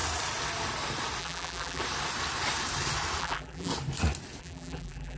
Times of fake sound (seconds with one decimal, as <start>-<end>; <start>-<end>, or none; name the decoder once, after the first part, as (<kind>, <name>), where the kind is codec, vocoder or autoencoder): 1.2-1.8 (vocoder, BigVGAN v2); 3.2-3.7; 4.4-5.2